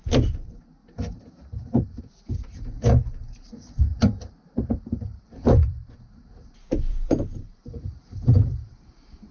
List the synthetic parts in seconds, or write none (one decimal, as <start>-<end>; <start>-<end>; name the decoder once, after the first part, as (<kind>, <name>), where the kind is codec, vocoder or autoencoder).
0.0-0.8 (vocoder, BigVGAN v2); 2.0-9.3